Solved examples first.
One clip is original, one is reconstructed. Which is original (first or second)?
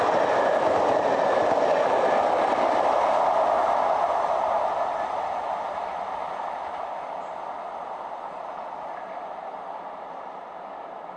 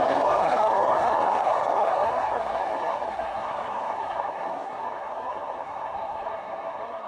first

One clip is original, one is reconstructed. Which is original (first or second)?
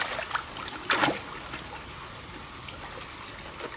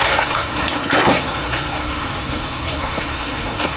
first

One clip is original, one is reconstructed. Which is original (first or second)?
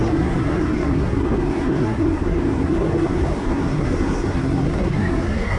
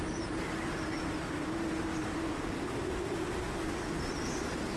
second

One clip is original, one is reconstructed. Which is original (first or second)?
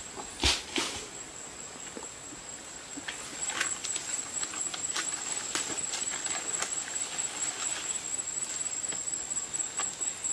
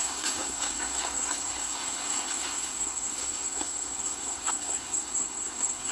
first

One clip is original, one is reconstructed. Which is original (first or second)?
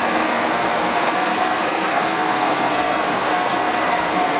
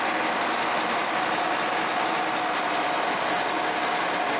second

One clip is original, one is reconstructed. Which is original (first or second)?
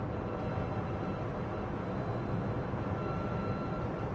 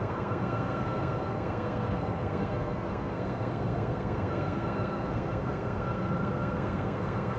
first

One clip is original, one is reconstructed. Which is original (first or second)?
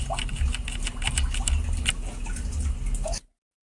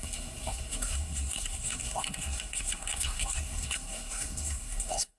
first